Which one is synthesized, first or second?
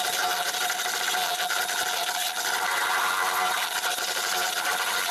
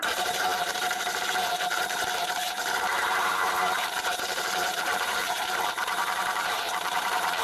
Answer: second